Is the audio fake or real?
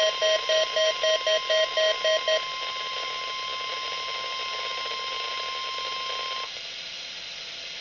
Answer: real